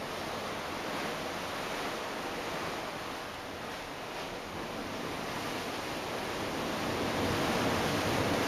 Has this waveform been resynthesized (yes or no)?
no